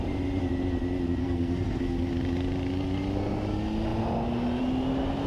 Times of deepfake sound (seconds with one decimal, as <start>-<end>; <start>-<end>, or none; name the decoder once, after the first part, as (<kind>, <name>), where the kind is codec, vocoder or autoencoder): 1.2-2.1 (codec, SNAC)